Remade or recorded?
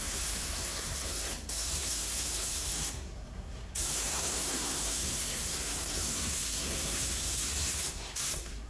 remade